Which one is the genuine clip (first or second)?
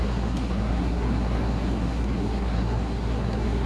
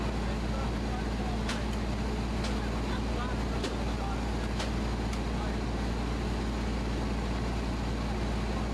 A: second